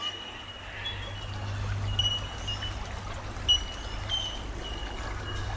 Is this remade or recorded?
recorded